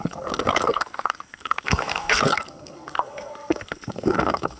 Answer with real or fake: fake